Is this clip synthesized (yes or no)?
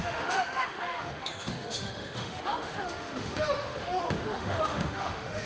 yes